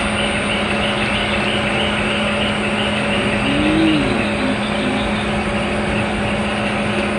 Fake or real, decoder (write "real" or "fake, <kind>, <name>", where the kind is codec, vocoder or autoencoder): real